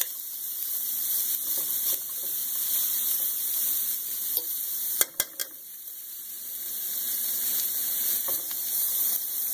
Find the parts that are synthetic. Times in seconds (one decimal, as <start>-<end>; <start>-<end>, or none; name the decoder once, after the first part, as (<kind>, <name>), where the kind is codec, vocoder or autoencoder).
5.4-6.4 (vocoder, BigVGAN v2)